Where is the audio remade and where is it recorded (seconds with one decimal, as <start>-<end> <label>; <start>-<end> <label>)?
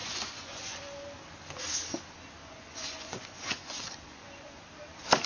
0.0-0.8 remade; 0.8-2.4 recorded; 2.4-4.6 remade; 4.6-5.3 recorded